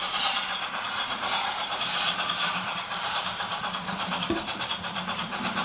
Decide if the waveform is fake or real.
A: fake